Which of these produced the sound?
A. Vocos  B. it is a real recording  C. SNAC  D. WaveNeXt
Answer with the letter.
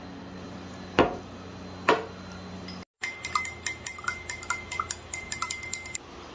B